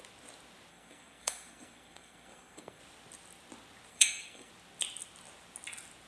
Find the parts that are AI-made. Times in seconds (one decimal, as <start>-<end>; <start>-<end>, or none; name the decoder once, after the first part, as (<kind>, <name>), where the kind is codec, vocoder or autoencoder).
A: 0.7-2.8 (codec, SNAC); 3.9-4.5